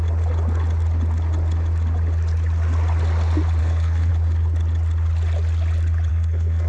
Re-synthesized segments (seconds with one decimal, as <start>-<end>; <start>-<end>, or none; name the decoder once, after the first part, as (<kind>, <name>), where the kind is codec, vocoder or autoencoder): 3.6-4.1 (codec, SNAC); 6.1-6.7

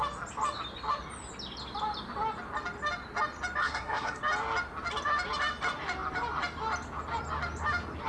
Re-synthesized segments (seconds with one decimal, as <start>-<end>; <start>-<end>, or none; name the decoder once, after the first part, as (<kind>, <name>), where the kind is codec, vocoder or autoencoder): 3.6-4.2 (codec, SNAC)

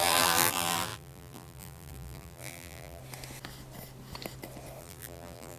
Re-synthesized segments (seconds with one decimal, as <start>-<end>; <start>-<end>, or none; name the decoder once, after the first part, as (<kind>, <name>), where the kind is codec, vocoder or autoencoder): 0.0-3.0 (vocoder, BigVGAN v2); 4.8-5.6

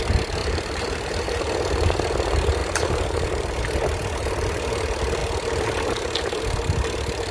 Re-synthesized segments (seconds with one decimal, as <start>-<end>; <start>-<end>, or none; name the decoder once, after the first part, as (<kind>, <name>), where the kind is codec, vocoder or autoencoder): 0.4-1.4 (vocoder, BigVGAN v2); 2.6-3.6

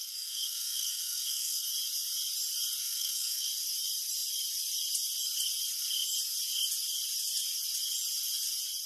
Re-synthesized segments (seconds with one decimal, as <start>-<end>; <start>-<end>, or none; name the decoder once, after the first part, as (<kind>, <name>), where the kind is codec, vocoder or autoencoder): 0.0-1.7 (codec, SNAC); 2.8-3.5

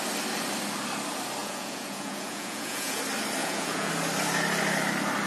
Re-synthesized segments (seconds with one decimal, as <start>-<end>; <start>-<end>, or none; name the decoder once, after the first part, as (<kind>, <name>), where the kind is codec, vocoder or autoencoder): 1.4-3.0 (vocoder, Vocos); 3.4-3.9